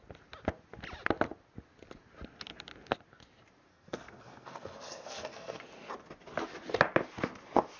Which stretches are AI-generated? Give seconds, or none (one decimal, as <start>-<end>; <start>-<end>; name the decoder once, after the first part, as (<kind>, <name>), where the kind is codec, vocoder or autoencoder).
3.7-5.6 (codec, SNAC)